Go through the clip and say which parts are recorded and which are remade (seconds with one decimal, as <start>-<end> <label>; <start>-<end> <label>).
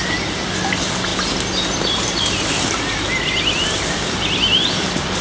0.0-5.2 recorded